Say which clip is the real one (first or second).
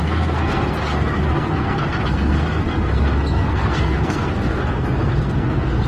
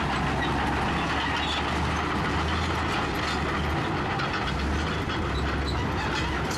second